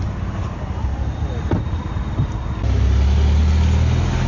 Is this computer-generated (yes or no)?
no